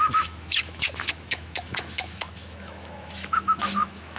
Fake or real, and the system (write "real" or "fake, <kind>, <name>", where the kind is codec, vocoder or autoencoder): fake, autoencoder, DAC-VAE